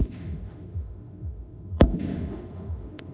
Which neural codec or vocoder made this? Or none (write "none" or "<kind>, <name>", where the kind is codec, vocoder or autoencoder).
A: autoencoder, DAC-VAE